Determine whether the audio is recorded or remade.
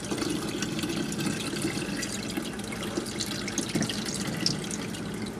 recorded